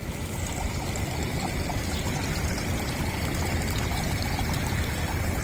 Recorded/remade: remade